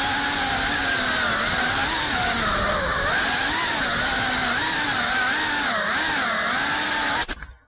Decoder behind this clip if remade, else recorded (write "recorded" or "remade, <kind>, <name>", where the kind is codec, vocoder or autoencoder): recorded